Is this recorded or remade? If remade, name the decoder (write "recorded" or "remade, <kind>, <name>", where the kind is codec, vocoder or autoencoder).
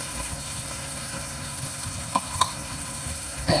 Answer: remade, codec, SNAC